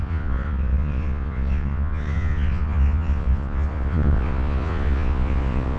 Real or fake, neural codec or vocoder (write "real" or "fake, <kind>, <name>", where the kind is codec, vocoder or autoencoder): fake, vocoder, Vocos